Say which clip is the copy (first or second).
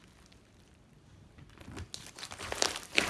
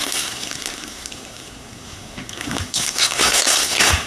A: second